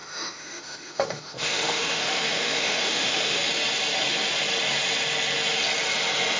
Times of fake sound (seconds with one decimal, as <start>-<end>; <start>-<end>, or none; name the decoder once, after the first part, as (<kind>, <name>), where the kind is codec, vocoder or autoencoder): 0.0-3.5 (autoencoder, DAC-VAE)